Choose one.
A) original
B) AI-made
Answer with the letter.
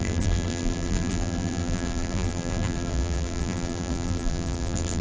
B